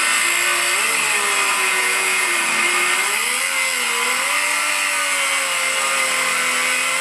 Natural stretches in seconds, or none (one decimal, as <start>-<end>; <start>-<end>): 0.0-1.5; 2.3-7.0